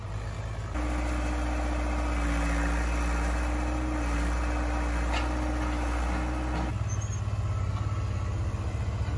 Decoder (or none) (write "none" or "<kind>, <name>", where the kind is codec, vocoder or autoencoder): none